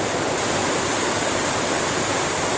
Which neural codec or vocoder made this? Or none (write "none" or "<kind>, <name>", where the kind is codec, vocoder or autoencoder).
vocoder, BigVGAN v2